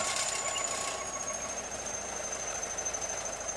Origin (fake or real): real